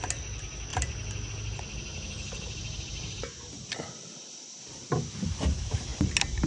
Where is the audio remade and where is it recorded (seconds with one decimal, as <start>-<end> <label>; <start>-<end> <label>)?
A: 0.0-0.7 recorded; 0.7-1.3 remade; 1.3-1.9 recorded; 1.9-3.2 remade; 3.2-6.5 recorded